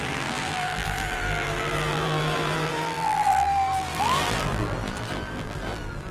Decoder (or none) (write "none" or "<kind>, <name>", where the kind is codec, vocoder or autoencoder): vocoder, BigVGAN v2